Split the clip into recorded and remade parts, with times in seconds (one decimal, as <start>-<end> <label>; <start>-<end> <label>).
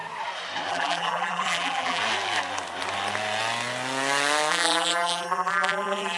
0.0-0.7 recorded; 0.7-2.0 remade; 2.0-4.5 recorded; 4.5-6.2 remade